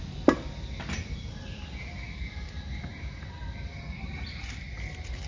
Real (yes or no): yes